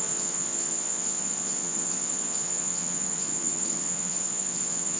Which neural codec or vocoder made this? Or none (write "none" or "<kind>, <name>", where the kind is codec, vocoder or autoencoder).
vocoder, Vocos